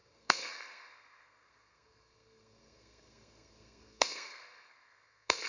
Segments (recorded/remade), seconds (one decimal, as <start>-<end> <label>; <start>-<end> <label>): 0.0-5.5 remade